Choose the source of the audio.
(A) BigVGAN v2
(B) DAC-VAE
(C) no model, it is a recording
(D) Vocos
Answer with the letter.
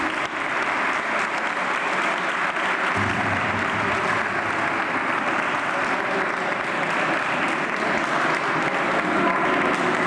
C